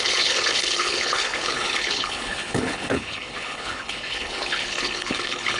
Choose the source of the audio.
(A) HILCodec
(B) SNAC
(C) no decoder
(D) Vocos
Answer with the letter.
A